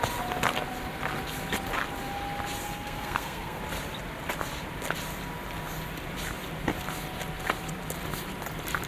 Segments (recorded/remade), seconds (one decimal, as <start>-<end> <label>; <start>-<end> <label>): 0.0-2.6 recorded; 2.6-3.6 remade; 3.6-8.9 recorded